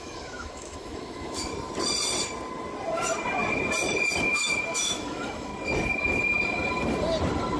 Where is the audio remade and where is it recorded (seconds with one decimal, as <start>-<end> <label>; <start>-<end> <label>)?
0.0-1.5 remade; 1.5-4.2 recorded; 4.2-5.5 remade; 5.5-7.6 recorded